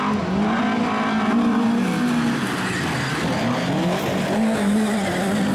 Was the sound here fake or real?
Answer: real